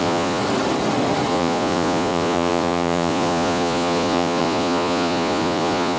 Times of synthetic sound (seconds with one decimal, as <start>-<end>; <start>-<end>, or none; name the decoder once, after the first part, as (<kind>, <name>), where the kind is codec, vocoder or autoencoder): 0.0-0.4 (vocoder, Vocos); 1.3-6.0